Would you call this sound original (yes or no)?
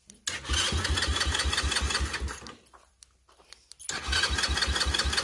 yes